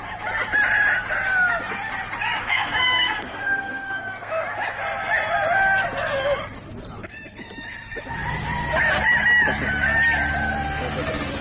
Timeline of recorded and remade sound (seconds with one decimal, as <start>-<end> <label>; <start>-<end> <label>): 0.0-2.4 recorded; 2.4-4.3 remade; 4.3-11.4 recorded

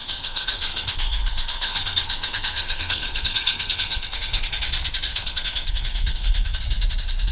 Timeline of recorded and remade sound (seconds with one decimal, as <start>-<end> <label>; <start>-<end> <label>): 0.0-4.4 remade; 4.4-5.1 recorded; 5.1-6.6 remade; 6.6-7.3 recorded